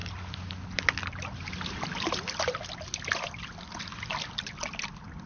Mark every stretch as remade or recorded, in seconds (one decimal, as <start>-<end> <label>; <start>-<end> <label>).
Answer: 0.0-5.3 recorded